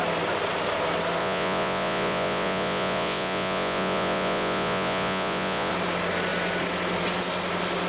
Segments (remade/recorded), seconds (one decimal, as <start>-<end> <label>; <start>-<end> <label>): 0.0-1.2 recorded; 1.2-5.7 remade; 5.7-7.9 recorded